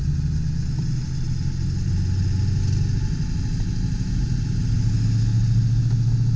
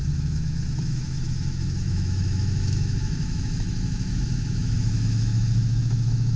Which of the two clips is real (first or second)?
first